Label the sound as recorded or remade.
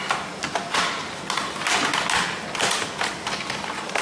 recorded